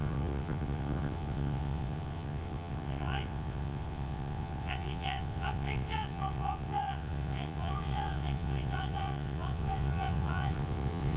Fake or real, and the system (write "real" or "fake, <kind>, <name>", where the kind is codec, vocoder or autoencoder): fake, vocoder, WaveNeXt